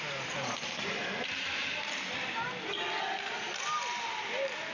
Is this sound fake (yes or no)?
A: no